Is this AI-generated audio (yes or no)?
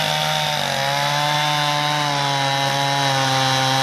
no